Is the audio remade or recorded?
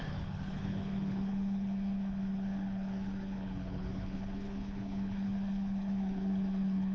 remade